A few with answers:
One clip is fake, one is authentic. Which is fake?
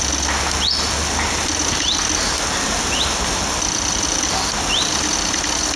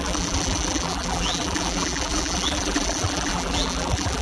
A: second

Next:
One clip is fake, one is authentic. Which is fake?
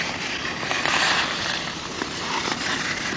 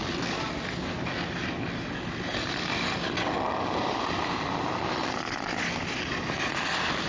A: first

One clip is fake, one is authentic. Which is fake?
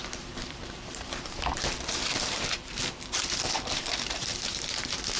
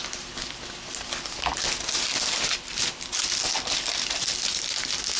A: first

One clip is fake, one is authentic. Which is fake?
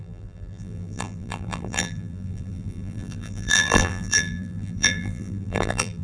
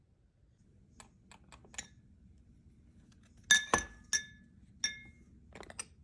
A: first